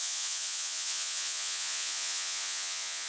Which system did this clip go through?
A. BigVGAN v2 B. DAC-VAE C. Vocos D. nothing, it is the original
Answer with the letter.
C